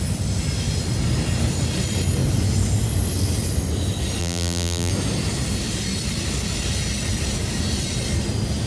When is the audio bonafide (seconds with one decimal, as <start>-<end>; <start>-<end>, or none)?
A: 0.0-4.2; 4.9-8.7